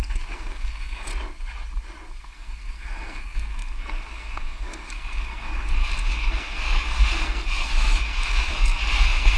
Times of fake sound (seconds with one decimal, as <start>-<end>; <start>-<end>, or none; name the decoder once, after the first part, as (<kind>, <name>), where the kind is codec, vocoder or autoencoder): 0.0-1.1 (codec, SNAC); 2.2-9.4